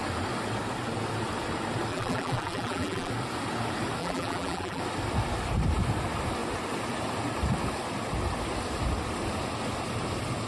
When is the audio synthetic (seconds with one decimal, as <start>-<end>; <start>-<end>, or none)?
1.9-3.1; 4.0-4.8